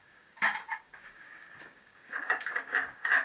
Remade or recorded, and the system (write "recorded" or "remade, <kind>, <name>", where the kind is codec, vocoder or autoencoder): remade, codec, DAC